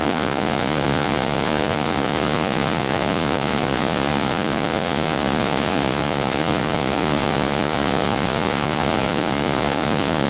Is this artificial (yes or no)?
yes